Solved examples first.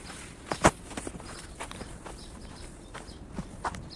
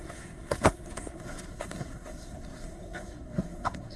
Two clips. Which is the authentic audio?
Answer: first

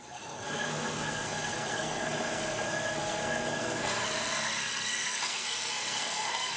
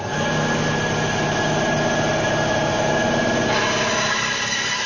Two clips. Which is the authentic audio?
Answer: second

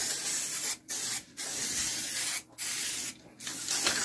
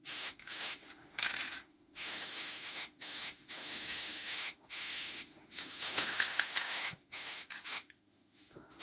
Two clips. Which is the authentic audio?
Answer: first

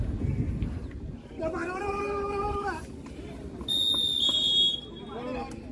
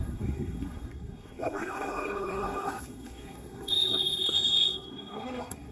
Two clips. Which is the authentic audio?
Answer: first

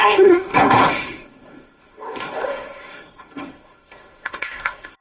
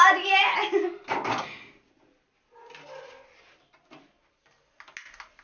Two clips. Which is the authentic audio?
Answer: second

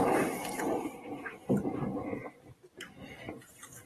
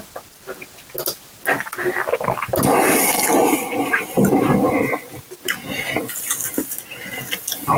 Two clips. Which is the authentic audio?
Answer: second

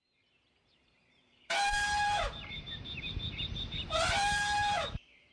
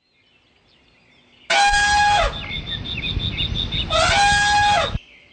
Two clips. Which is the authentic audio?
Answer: second